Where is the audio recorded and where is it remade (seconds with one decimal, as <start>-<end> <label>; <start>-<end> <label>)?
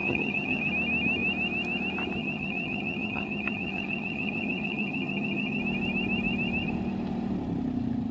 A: 0.0-0.7 remade; 0.7-2.2 recorded; 2.2-5.6 remade; 5.6-8.1 recorded